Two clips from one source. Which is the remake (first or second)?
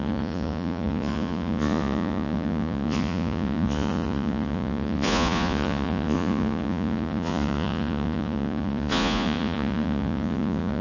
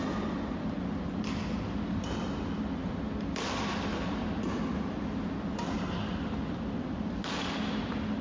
first